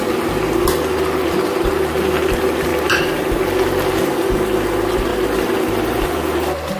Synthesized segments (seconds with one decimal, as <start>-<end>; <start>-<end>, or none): none